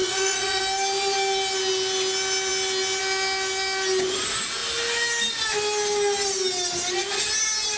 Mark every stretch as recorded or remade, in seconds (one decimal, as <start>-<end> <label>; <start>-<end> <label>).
0.0-0.6 remade; 0.6-7.8 recorded